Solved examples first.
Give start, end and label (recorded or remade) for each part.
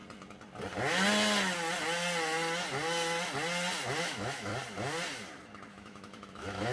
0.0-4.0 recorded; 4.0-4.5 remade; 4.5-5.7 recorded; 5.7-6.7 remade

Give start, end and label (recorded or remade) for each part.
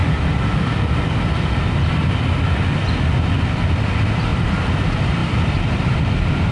0.0-4.3 recorded; 4.3-4.8 remade; 4.8-5.2 recorded; 5.2-6.1 remade; 6.1-6.5 recorded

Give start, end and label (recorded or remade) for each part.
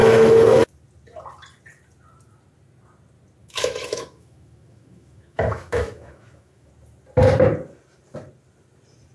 0.0-0.7 remade; 0.7-3.4 recorded; 3.4-6.7 remade; 6.7-9.1 recorded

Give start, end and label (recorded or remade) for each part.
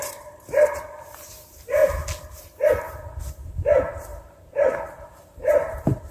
0.0-1.8 remade; 1.8-3.3 recorded; 3.3-6.1 remade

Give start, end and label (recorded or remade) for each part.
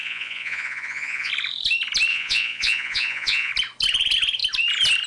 0.0-1.3 remade; 1.3-2.1 recorded; 2.1-3.5 remade; 3.5-5.1 recorded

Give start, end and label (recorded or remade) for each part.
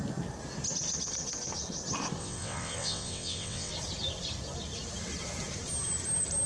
0.0-2.2 recorded; 2.2-3.7 remade; 3.7-6.5 recorded